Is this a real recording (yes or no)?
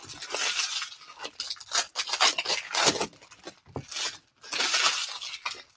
yes